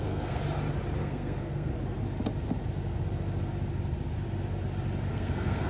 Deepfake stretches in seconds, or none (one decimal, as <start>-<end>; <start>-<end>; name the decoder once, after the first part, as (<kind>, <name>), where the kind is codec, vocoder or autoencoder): 0.0-0.4 (codec, SNAC); 1.0-1.7; 5.1-5.7